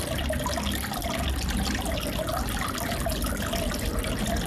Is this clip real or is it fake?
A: real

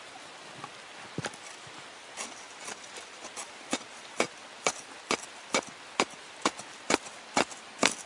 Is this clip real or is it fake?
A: real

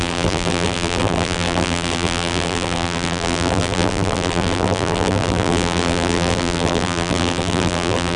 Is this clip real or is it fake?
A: fake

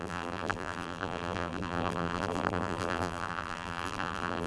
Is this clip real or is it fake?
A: fake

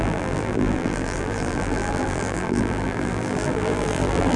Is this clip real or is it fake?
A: fake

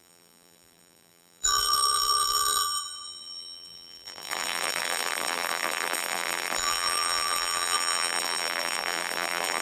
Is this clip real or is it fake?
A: fake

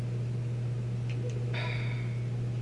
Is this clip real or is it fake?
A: real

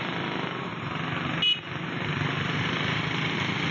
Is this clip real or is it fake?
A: real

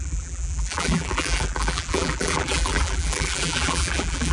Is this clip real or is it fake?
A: fake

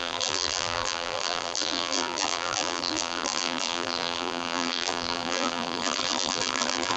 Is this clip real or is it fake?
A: fake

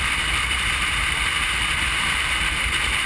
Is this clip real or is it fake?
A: fake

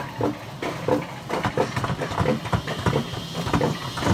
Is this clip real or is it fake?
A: real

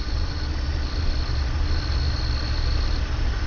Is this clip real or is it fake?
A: real